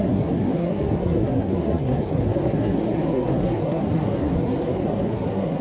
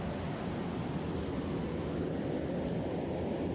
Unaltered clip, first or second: second